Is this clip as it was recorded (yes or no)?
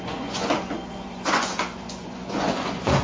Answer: no